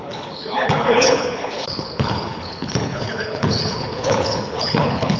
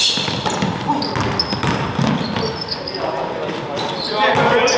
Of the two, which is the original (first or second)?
second